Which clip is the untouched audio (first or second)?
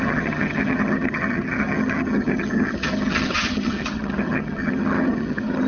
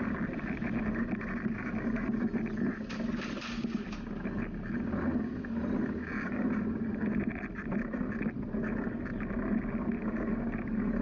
second